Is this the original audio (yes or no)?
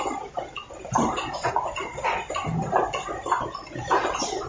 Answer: yes